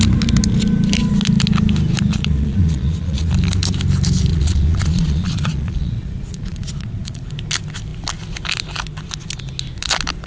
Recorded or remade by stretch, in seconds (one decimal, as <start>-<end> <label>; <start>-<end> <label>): 0.0-2.1 recorded; 2.1-3.3 remade; 3.3-4.3 recorded; 4.3-7.3 remade; 7.3-10.3 recorded